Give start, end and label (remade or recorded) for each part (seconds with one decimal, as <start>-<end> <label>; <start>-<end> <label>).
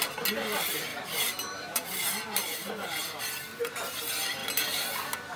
0.0-0.9 recorded; 0.9-3.2 remade; 3.2-5.4 recorded